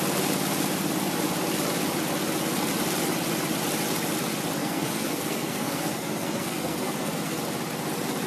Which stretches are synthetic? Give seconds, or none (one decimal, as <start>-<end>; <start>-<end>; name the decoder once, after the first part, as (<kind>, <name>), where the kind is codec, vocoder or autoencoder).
4.6-7.4 (codec, SNAC)